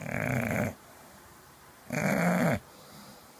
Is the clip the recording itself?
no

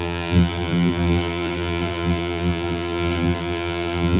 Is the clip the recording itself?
no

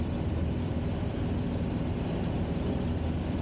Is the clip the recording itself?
no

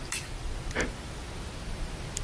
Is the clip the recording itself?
yes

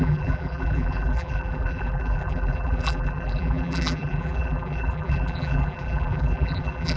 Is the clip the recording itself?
no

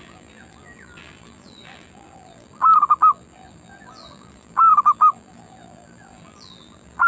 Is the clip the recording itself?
no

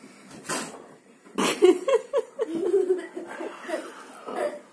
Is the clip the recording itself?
yes